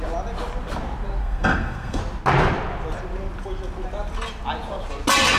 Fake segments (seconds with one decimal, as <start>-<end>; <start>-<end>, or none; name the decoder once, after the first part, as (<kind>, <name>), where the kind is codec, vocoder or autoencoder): 1.2-2.0 (codec, SNAC)